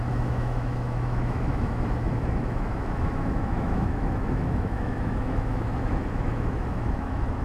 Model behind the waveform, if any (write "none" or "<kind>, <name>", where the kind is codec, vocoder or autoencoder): autoencoder, DAC-VAE